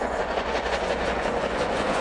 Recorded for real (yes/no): no